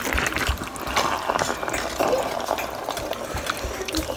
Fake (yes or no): no